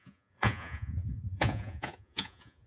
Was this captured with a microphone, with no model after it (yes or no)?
no